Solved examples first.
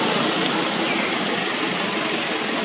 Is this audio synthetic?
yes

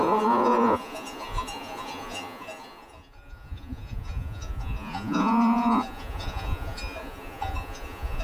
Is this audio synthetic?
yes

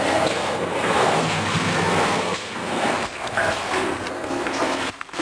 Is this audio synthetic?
yes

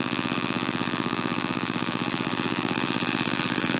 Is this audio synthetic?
yes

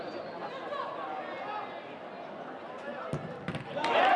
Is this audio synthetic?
no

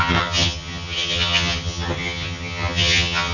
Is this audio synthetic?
yes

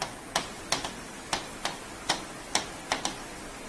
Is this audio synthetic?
no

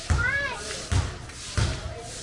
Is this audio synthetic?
no